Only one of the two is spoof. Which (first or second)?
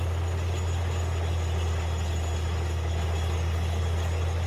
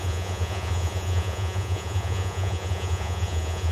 second